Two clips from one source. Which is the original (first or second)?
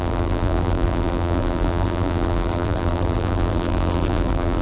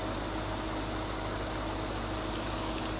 second